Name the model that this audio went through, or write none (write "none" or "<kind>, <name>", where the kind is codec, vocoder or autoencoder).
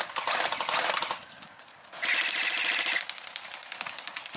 none